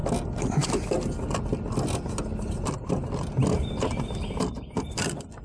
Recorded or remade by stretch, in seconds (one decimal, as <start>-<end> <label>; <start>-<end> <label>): 0.0-2.5 recorded; 2.5-5.4 remade